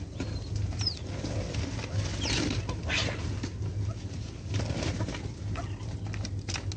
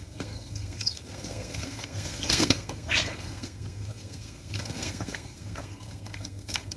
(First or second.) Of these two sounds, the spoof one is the second